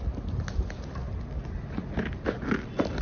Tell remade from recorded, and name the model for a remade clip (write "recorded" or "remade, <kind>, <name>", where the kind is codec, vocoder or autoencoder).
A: recorded